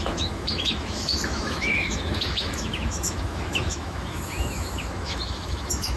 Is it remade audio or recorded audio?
remade